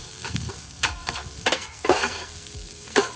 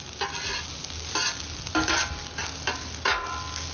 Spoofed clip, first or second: first